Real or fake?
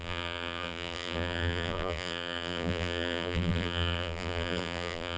fake